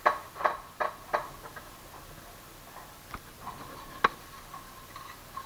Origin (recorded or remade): recorded